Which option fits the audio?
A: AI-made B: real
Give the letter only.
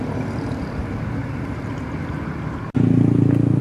B